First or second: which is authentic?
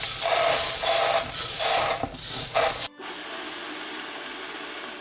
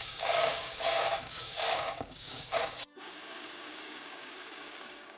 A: first